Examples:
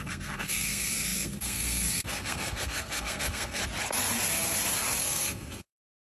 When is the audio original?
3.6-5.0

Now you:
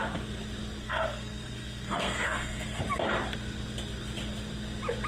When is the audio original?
0.0-0.8; 2.8-5.1

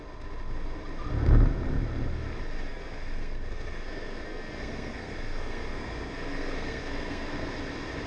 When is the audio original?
0.0-2.7; 7.5-8.1